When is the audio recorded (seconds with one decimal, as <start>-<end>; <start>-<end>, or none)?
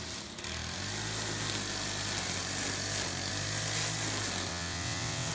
0.0-4.5